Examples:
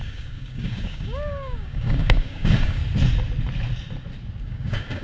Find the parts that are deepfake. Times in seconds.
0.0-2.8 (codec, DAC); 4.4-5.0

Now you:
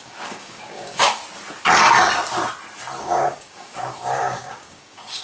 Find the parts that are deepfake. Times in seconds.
0.0-1.2 (codec, DAC); 3.0-5.2